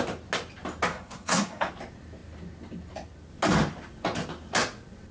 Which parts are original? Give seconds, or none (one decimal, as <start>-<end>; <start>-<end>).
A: 0.0-0.9; 1.7-5.1